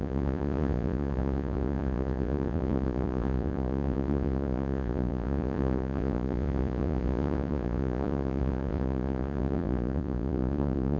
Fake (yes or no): yes